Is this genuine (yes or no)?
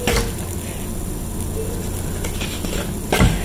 yes